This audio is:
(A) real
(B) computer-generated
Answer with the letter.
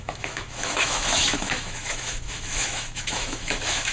B